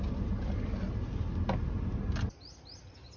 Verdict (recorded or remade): recorded